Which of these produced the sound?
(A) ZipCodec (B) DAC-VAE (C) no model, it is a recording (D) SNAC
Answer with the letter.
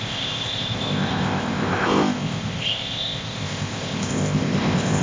A